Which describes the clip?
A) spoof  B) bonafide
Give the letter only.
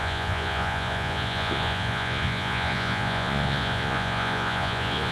A